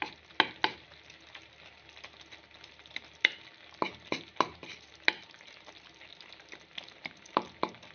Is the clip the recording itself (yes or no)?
yes